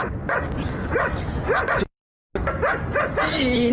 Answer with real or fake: real